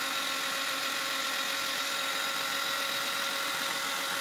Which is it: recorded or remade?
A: recorded